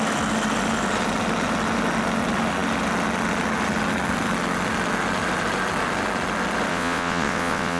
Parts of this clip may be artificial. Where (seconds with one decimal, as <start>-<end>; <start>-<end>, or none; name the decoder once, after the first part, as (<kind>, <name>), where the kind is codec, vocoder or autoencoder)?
6.7-7.8 (vocoder, WaveNeXt)

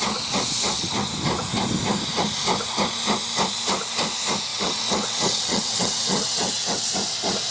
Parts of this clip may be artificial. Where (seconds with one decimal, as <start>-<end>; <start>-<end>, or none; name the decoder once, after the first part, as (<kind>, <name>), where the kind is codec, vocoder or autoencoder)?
4.5-6.9 (vocoder, WaveNeXt)

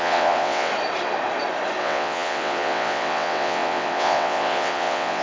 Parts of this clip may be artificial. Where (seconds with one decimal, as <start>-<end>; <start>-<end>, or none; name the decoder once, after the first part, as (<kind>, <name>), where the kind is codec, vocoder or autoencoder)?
0.0-0.7 (vocoder, WaveNeXt); 1.8-5.2

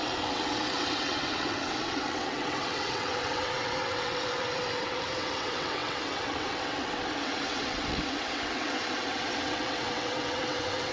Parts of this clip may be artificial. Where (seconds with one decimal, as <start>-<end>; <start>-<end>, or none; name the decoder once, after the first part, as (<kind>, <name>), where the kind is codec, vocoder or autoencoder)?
0.0-10.9 (vocoder, WaveNeXt)